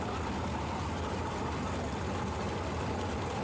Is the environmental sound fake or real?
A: real